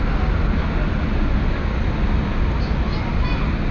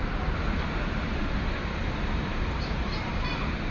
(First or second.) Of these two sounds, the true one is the first